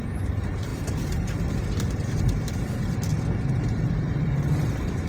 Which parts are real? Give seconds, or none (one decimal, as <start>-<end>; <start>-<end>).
3.1-3.6